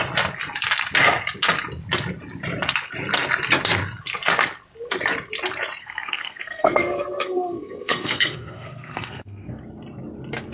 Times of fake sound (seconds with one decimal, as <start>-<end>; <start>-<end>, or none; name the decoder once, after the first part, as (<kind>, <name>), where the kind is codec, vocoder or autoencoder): 5.8-9.6 (codec, SNAC)